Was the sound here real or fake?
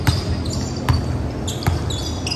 real